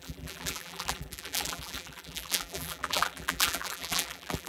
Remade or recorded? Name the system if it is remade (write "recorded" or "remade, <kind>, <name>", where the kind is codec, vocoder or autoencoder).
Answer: remade, vocoder, BigVGAN v2